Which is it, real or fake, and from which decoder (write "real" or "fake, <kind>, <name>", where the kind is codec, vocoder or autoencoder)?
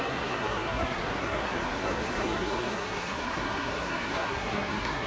fake, codec, SNAC